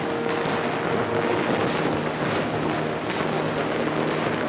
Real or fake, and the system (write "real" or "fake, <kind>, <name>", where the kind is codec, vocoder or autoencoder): real